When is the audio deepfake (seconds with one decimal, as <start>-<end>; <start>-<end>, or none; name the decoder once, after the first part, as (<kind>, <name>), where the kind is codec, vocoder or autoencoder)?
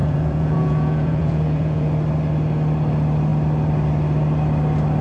0.0-1.9 (vocoder, Vocos)